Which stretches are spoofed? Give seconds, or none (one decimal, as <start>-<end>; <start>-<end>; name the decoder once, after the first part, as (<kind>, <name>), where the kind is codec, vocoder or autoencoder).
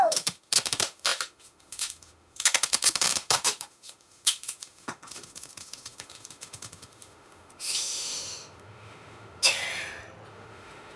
0.0-9.6 (autoencoder, DAC-VAE); 10.3-11.0